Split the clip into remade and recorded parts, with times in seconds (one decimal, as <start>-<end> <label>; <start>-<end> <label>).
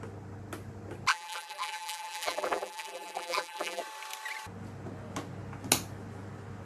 0.0-1.1 recorded; 1.1-3.8 remade; 3.8-6.7 recorded